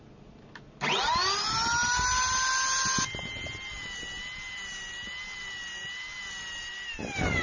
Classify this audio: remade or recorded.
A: recorded